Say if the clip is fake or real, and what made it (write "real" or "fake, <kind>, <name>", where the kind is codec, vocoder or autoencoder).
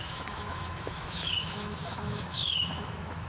fake, autoencoder, DAC-VAE